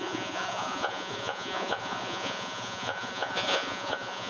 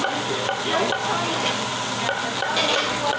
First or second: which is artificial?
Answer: first